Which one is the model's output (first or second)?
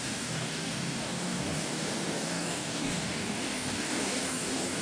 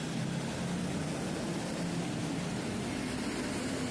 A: first